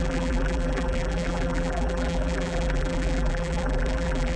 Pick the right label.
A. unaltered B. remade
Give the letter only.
B